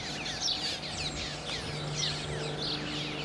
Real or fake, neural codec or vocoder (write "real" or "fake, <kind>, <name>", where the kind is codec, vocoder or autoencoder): real